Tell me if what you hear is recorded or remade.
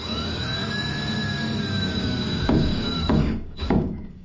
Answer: remade